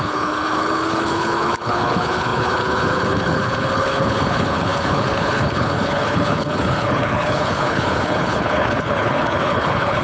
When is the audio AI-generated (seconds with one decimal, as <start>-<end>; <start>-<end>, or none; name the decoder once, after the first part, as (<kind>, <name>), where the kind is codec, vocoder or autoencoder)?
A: 0.0-10.0 (codec, HILCodec)